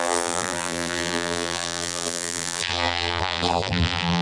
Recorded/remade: remade